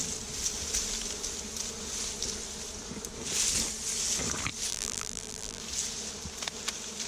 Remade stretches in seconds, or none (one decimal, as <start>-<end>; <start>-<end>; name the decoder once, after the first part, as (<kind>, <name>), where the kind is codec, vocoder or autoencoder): 4.7-5.6 (vocoder, BigVGAN v2)